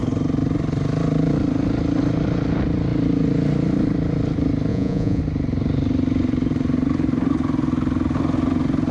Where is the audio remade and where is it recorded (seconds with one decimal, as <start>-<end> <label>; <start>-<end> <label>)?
0.0-4.7 recorded; 4.7-5.2 remade; 5.2-8.9 recorded